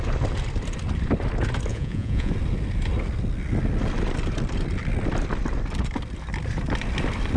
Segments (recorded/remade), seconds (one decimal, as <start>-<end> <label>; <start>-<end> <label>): 0.0-1.7 recorded; 1.7-2.3 remade; 2.3-7.4 recorded